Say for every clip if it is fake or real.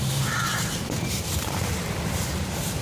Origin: fake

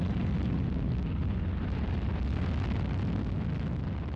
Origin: real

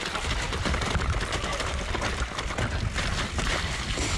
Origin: real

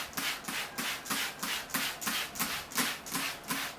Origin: real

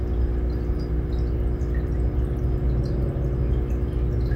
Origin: real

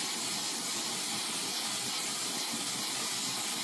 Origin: real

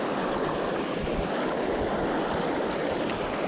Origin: real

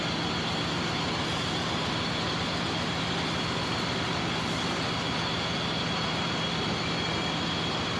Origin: real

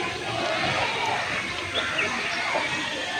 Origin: real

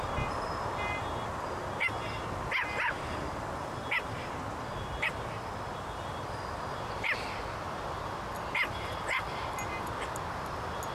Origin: real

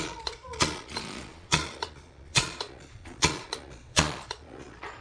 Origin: fake